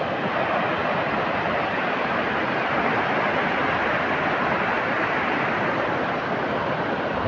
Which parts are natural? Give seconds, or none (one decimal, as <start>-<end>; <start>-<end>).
0.0-7.3